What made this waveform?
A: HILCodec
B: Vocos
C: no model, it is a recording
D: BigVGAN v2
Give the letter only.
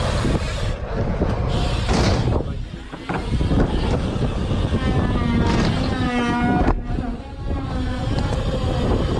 C